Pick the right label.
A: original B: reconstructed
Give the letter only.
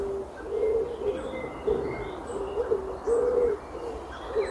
A